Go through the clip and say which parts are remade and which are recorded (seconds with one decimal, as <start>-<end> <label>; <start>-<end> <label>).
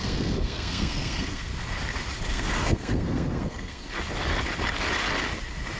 0.0-1.5 remade; 1.5-2.3 recorded; 2.3-3.8 remade; 3.8-5.8 recorded